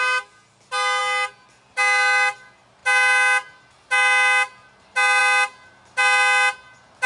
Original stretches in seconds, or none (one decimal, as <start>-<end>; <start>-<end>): 0.0-7.1